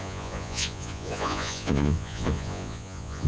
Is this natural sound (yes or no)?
no